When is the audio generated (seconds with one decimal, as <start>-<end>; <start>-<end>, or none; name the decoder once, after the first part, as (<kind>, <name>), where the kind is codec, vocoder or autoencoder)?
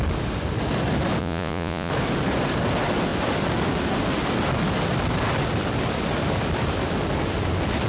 1.2-1.9 (vocoder, Vocos)